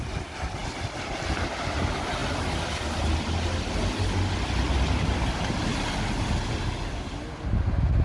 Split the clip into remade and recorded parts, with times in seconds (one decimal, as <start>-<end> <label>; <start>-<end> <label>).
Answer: 0.0-8.0 recorded